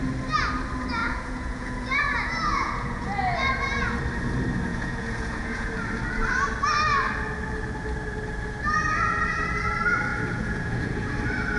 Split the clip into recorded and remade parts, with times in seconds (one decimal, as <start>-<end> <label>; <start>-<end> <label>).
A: 0.0-1.0 recorded; 1.0-4.0 remade; 4.0-4.7 recorded; 4.7-5.7 remade; 5.7-10.1 recorded; 10.1-11.1 remade; 11.1-11.6 recorded